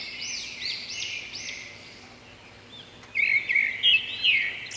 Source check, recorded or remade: recorded